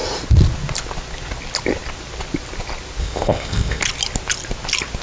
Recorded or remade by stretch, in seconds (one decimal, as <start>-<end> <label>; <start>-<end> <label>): 0.0-3.0 recorded; 3.0-3.8 remade; 3.8-5.0 recorded